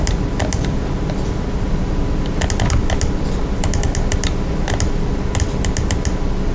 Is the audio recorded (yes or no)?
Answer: yes